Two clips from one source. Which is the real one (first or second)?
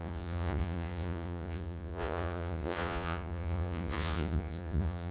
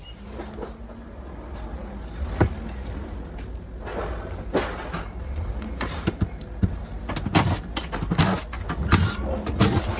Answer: second